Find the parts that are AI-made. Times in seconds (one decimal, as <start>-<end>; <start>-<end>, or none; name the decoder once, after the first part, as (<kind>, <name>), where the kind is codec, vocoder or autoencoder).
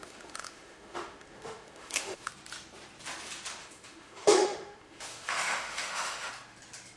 0.0-2.3 (autoencoder, DAC-VAE); 3.6-6.3